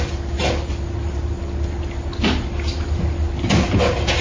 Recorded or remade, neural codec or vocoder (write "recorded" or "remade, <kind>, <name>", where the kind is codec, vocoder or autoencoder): recorded